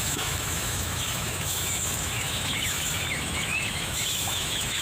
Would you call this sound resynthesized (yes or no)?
yes